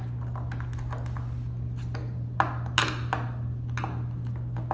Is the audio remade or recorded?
recorded